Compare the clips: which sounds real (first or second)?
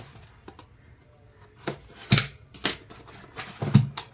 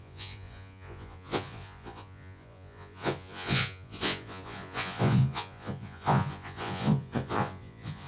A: first